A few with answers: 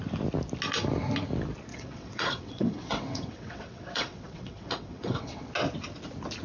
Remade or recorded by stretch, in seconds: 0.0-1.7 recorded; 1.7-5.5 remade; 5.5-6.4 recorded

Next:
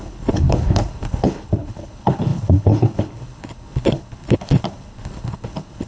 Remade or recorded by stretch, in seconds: 0.0-5.9 remade

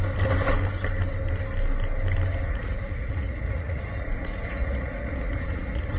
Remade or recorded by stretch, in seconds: 0.0-2.3 recorded; 2.3-6.0 remade

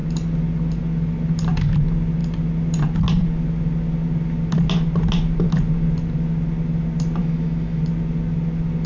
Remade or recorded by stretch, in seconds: 0.0-7.2 recorded; 7.2-7.8 remade; 7.8-8.9 recorded

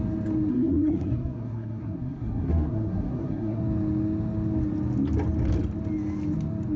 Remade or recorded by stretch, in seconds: 0.0-0.5 recorded; 0.5-3.6 remade; 3.6-6.8 recorded

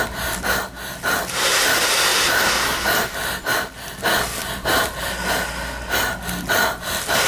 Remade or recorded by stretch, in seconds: 0.0-7.3 recorded

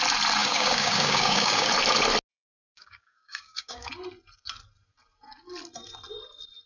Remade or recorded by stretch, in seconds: 0.0-0.4 recorded; 0.4-1.7 remade; 1.7-2.3 recorded; 2.3-3.9 remade; 3.9-6.7 recorded

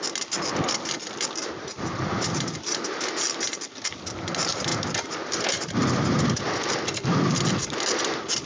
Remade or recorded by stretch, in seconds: 0.0-1.4 recorded; 1.4-2.8 remade; 2.8-4.7 recorded; 4.7-6.4 remade; 6.4-8.5 recorded